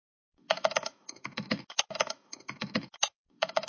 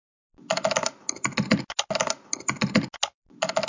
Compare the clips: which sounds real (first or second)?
second